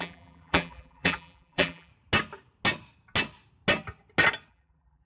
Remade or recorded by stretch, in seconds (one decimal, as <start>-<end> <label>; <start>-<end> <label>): 0.0-1.9 remade; 1.9-4.5 recorded; 4.5-5.1 remade